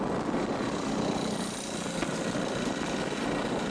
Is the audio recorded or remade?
recorded